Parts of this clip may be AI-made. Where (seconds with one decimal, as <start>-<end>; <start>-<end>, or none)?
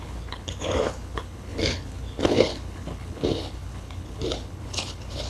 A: 0.0-5.3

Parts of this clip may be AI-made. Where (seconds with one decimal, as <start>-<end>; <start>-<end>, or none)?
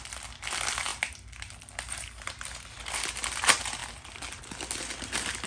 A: none